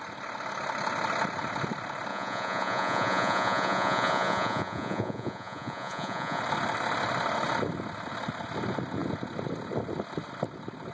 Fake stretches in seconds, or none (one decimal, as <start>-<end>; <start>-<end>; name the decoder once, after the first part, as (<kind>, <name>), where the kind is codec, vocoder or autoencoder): 2.1-6.4 (vocoder, Vocos)